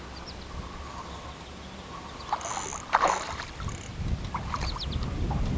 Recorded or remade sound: recorded